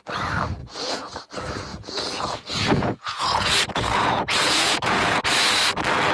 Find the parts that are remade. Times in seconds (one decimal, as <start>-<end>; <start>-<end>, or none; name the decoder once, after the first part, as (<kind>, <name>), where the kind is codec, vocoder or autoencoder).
0.6-1.2 (vocoder, Vocos); 1.7-5.2